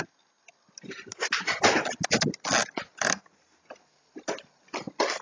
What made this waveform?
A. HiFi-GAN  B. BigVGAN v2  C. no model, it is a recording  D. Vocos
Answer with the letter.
C